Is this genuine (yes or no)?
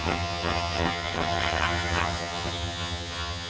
no